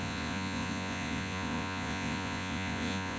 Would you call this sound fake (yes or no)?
yes